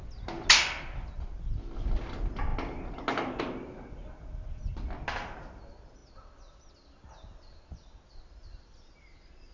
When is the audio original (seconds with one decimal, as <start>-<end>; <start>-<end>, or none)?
0.0-9.5